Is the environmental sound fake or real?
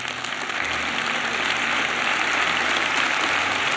real